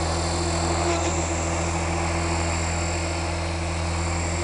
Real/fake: real